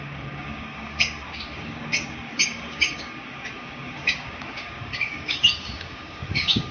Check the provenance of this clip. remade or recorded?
remade